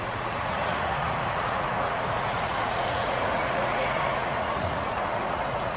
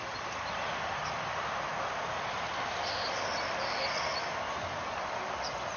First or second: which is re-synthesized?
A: first